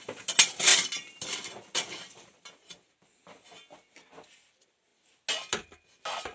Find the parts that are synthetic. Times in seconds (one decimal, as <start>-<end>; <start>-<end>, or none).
none